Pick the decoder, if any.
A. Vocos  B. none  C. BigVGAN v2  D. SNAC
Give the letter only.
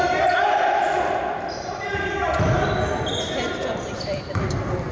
C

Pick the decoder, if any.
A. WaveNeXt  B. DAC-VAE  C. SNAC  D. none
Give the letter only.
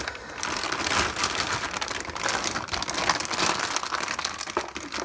D